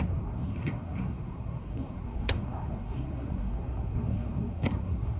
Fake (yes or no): yes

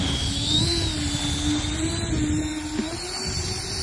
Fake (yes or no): no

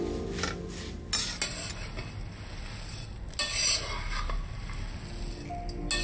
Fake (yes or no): no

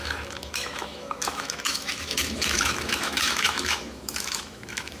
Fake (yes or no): yes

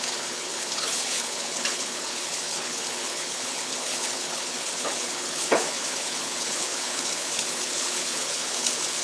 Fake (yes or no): yes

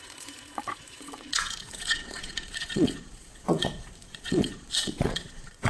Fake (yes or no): yes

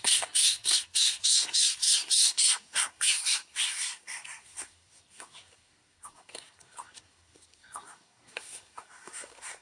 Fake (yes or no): yes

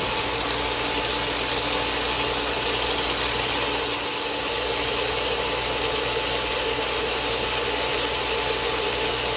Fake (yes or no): no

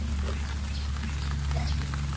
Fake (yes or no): no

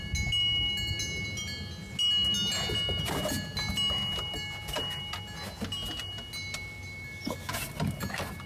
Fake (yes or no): no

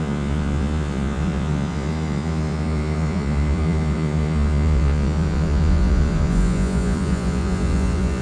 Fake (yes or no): yes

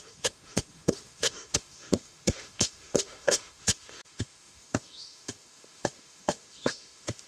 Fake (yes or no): yes